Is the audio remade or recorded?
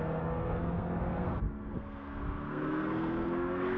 remade